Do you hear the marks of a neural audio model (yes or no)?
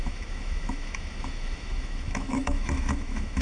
yes